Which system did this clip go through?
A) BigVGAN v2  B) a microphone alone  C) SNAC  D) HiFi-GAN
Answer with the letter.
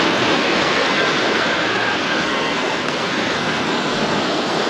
C